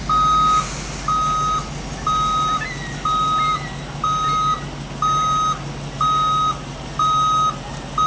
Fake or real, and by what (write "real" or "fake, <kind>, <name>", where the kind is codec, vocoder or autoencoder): real